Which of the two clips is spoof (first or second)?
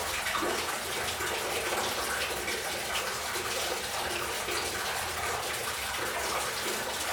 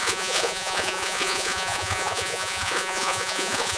second